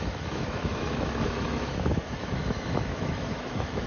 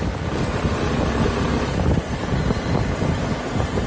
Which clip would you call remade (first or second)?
first